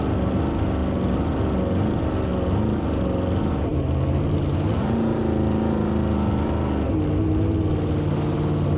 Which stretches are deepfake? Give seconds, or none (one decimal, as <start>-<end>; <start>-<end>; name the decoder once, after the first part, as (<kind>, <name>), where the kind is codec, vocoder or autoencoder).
0.8-1.4 (vocoder, BigVGAN v2)